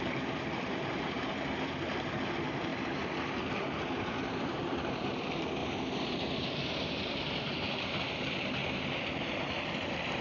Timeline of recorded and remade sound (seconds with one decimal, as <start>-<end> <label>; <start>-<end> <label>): 0.0-10.2 recorded